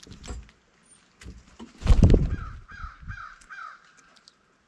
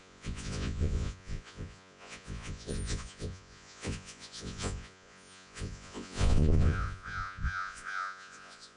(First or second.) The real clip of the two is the first